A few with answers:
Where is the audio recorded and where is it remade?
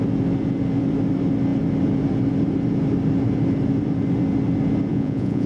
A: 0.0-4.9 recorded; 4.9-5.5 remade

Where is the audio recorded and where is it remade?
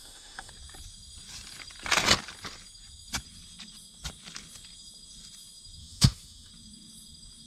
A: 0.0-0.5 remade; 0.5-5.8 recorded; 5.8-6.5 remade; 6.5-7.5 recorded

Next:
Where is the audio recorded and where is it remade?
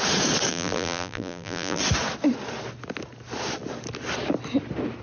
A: 0.0-0.5 recorded; 0.5-1.8 remade; 1.8-5.0 recorded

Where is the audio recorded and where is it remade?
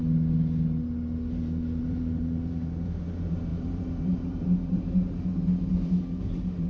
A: 0.0-1.8 recorded; 1.8-5.3 remade; 5.3-6.7 recorded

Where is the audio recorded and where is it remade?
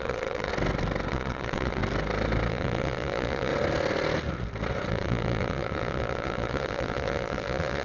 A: 0.0-0.5 remade; 0.5-1.1 recorded; 1.1-1.8 remade; 1.8-2.5 recorded; 2.5-3.5 remade; 3.5-4.9 recorded; 4.9-7.8 remade